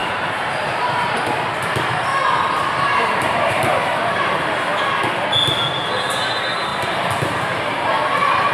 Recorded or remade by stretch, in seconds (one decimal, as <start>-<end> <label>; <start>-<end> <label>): 0.0-4.8 remade; 4.8-6.7 recorded; 6.7-8.0 remade; 8.0-8.5 recorded